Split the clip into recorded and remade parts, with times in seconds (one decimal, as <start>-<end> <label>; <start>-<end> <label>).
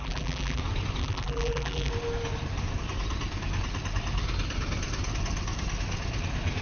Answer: 0.0-0.6 remade; 0.6-1.0 recorded; 1.0-1.9 remade; 1.9-6.6 recorded